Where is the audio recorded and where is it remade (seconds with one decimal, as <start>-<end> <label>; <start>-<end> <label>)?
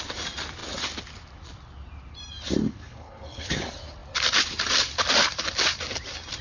0.0-2.6 recorded; 2.6-3.6 remade; 3.6-6.4 recorded